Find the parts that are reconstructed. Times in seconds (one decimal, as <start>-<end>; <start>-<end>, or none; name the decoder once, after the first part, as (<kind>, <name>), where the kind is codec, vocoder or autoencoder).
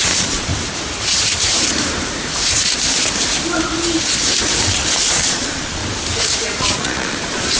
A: 0.0-0.5 (vocoder, Vocos); 5.1-5.8; 6.6-7.6